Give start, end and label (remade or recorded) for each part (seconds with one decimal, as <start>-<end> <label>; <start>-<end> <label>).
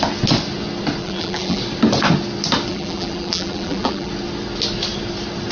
0.0-1.0 recorded; 1.0-1.6 remade; 1.6-2.7 recorded; 2.7-4.1 remade; 4.1-5.5 recorded